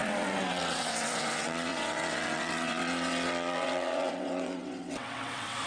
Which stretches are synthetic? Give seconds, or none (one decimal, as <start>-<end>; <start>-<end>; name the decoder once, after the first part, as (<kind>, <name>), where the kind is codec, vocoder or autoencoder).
0.0-5.7 (vocoder, WaveNeXt)